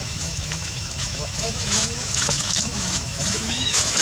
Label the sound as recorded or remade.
remade